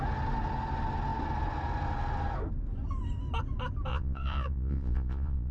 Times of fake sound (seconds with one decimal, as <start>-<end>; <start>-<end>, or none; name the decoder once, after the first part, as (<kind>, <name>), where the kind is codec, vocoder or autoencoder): 3.9-5.5 (vocoder, Vocos)